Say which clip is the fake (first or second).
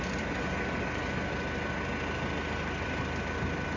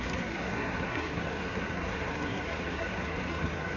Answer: second